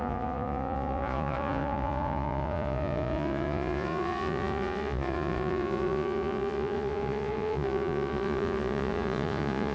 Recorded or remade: remade